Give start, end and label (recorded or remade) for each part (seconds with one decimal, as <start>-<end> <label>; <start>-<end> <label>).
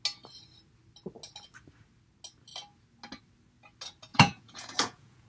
0.0-4.1 recorded; 4.1-5.3 remade